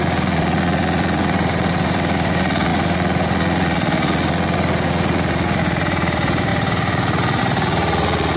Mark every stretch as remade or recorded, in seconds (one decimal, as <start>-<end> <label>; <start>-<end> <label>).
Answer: 0.0-8.4 remade

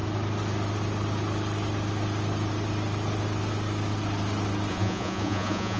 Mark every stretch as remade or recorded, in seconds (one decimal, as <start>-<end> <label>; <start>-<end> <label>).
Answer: 0.0-4.7 recorded; 4.7-5.8 remade